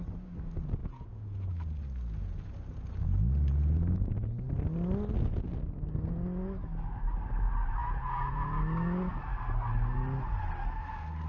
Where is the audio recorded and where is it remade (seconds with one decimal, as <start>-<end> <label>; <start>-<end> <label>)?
0.0-0.8 recorded; 0.8-1.5 remade; 1.5-7.8 recorded; 7.8-8.6 remade; 8.6-11.3 recorded